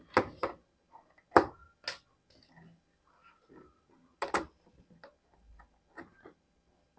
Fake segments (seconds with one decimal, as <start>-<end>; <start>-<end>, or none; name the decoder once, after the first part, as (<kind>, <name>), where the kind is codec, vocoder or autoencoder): none